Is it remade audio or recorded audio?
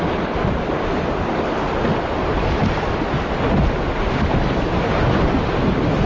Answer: recorded